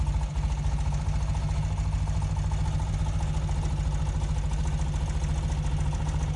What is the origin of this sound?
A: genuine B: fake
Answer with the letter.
A